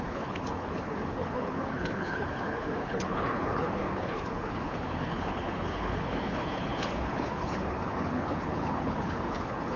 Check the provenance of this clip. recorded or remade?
remade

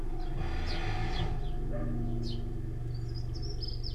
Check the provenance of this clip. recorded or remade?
recorded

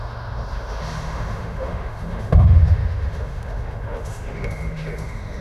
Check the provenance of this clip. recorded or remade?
remade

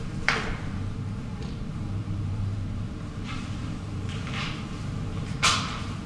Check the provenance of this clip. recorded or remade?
remade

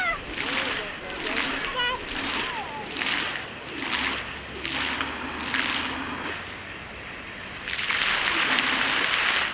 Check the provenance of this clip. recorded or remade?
recorded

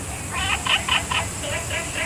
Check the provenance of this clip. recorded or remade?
recorded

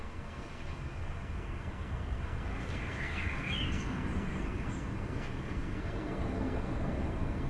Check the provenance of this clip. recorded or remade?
remade